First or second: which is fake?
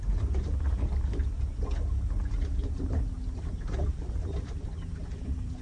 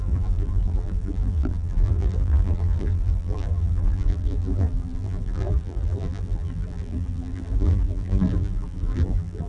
second